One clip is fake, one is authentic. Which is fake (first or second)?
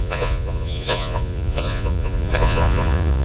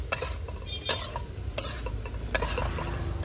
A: first